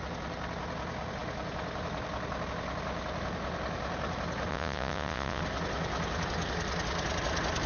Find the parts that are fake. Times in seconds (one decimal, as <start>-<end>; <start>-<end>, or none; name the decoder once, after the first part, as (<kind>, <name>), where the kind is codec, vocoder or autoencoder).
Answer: 4.5-5.4 (vocoder, Vocos)